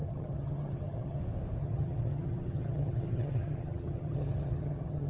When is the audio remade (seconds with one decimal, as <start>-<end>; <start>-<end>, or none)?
0.0-1.2; 1.6-5.1